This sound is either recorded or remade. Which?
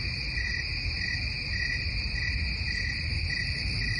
recorded